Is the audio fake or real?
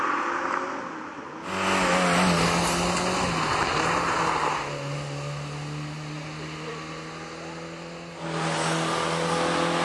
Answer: real